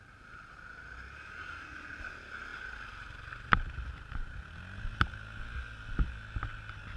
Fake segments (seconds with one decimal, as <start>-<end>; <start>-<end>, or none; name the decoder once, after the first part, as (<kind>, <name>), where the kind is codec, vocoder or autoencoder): none